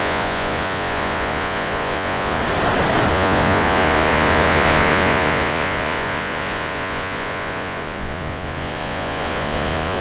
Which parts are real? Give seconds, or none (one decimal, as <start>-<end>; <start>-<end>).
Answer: 2.4-3.1